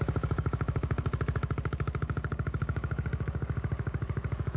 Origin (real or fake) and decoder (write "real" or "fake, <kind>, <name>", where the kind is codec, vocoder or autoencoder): fake, codec, DAC